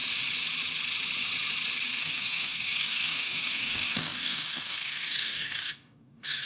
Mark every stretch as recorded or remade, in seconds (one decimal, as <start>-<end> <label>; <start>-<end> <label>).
0.0-2.0 recorded; 2.0-6.5 remade